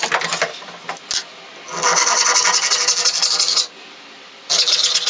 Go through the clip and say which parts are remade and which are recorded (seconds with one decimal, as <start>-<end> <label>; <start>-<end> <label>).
0.0-5.1 recorded